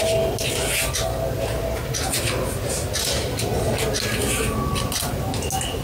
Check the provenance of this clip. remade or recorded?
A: recorded